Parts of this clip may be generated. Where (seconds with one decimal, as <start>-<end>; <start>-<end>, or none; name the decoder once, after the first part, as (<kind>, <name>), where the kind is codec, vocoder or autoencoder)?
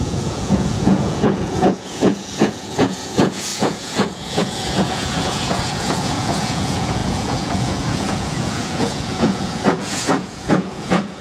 0.0-11.2 (vocoder, Vocos)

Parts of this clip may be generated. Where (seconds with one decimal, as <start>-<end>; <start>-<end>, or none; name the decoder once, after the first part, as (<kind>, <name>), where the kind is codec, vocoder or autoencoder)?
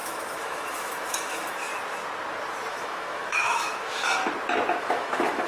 0.0-1.7 (autoencoder, DAC-VAE); 2.7-4.2; 4.8-5.5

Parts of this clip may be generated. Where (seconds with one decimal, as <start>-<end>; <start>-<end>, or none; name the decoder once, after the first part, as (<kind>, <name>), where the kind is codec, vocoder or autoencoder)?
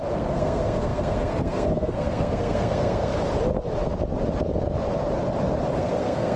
0.0-3.1 (codec, SNAC); 5.8-6.4